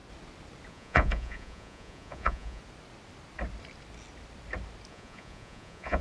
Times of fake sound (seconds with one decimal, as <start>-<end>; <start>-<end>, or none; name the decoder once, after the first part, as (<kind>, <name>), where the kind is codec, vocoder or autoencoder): 0.7-2.6 (vocoder, Vocos); 4.9-6.0